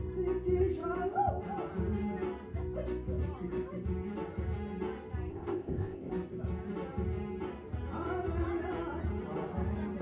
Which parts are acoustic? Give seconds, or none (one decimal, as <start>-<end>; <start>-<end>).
0.0-5.3; 6.1-10.0